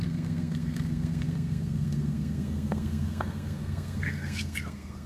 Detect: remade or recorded remade